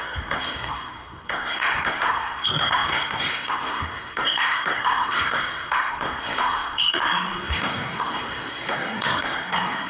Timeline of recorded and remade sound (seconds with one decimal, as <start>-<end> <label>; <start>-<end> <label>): 0.0-9.9 remade